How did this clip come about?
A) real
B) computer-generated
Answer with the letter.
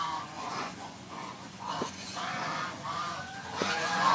B